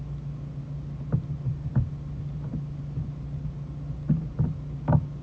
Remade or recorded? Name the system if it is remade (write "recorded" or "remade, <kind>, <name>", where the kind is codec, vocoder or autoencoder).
recorded